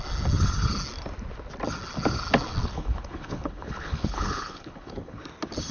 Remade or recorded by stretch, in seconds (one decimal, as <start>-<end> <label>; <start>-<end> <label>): 0.0-2.6 recorded; 2.6-5.2 remade; 5.2-5.7 recorded